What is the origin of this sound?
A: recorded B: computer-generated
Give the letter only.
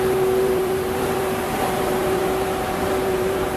B